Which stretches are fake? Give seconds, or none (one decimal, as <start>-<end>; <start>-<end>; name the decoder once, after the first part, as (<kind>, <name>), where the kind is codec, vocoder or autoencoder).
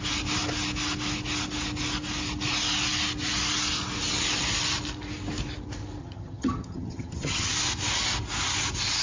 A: 6.0-7.5 (vocoder, HiFi-GAN)